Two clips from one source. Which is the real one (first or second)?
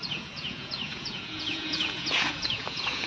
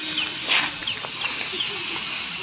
second